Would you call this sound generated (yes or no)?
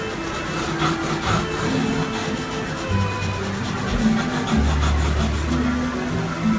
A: no